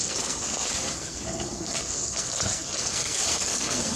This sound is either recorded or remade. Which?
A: remade